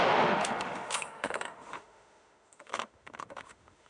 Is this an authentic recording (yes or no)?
no